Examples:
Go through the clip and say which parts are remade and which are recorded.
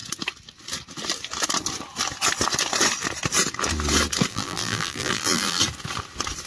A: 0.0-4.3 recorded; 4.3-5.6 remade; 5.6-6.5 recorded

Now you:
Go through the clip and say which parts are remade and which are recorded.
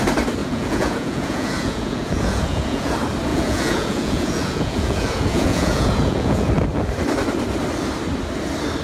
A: 0.0-0.4 recorded; 0.4-2.9 remade; 2.9-3.3 recorded; 3.3-6.5 remade; 6.5-8.8 recorded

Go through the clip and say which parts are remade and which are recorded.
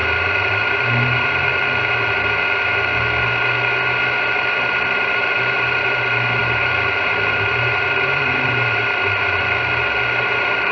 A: 0.0-1.5 remade; 1.5-4.6 recorded; 4.6-10.7 remade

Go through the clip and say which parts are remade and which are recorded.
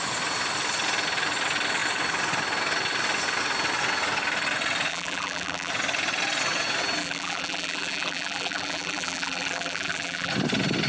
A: 0.0-4.9 recorded; 4.9-5.7 remade; 5.7-7.0 recorded; 7.0-10.3 remade; 10.3-10.9 recorded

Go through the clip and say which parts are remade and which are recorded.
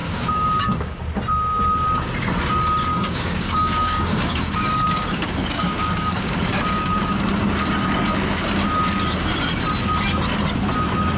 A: 0.0-1.0 remade; 1.0-2.9 recorded; 2.9-7.2 remade; 7.2-11.2 recorded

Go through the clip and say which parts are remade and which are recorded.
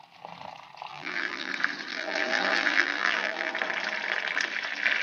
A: 0.0-0.9 recorded; 0.9-1.5 remade; 1.5-1.9 recorded; 1.9-3.5 remade; 3.5-5.0 recorded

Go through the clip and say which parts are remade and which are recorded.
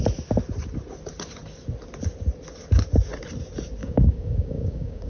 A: 0.0-3.8 recorded; 3.8-5.1 remade